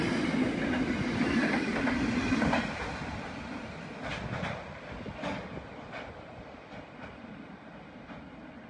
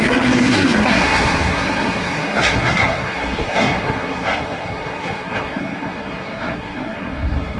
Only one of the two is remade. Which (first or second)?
second